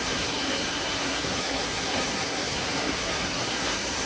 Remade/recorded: remade